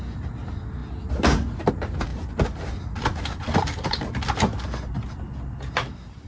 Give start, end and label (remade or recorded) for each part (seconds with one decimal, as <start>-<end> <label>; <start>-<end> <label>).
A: 0.0-6.3 recorded

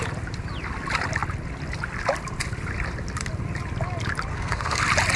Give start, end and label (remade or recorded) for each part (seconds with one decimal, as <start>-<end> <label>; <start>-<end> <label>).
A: 0.0-4.3 recorded; 4.3-4.8 remade; 4.8-5.2 recorded

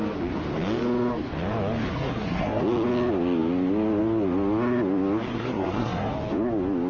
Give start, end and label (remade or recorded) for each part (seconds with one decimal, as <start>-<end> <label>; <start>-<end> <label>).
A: 0.0-1.9 recorded; 1.9-2.6 remade; 2.6-5.3 recorded; 5.3-6.1 remade; 6.1-6.9 recorded

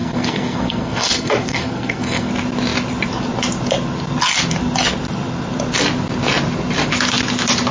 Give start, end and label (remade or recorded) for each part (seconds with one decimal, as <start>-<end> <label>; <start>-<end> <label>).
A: 0.0-2.3 remade; 2.3-7.7 recorded

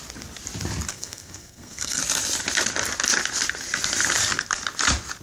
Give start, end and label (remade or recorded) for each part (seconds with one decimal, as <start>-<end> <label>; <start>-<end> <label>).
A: 0.0-0.9 recorded; 0.9-2.0 remade; 2.0-5.2 recorded

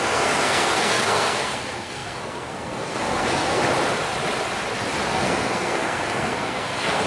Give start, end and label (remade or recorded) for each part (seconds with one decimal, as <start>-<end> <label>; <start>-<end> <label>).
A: 0.0-3.6 remade; 3.6-5.1 recorded; 5.1-7.1 remade